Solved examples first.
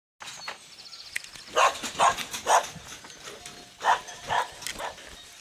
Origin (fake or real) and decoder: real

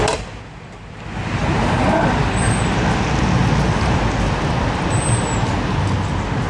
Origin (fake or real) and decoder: real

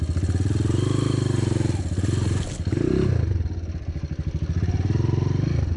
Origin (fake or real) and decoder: real